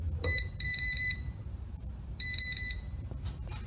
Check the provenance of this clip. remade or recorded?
remade